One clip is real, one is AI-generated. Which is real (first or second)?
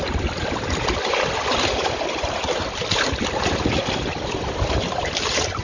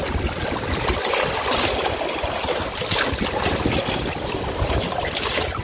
second